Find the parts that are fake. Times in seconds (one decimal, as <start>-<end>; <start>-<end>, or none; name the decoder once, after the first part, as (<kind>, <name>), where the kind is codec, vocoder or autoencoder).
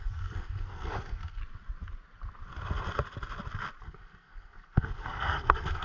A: 0.0-1.4 (codec, SNAC); 3.8-5.8